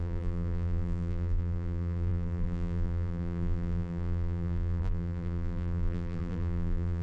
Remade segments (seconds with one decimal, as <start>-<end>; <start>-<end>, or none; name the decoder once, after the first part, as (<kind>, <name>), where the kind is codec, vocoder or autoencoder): 0.0-7.0 (vocoder, BigVGAN v2)

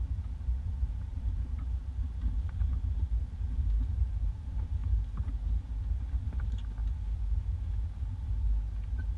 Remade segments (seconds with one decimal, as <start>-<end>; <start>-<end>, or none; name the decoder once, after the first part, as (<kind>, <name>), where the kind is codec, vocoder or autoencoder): 0.0-1.8 (vocoder, BigVGAN v2); 3.2-4.8; 6.0-6.8

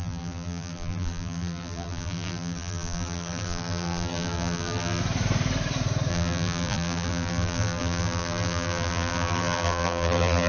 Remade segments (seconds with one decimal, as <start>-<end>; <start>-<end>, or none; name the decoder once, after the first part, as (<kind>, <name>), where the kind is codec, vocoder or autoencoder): 0.0-5.0 (vocoder, BigVGAN v2); 6.1-10.5

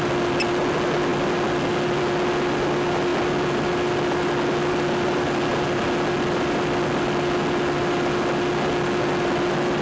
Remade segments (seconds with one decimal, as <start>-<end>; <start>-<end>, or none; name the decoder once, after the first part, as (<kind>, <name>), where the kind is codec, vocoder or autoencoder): none

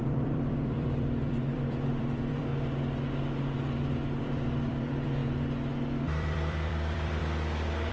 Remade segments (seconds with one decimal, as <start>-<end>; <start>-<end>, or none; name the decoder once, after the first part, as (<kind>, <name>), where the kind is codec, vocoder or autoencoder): 0.0-2.5 (vocoder, BigVGAN v2); 4.2-5.2; 6.0-7.2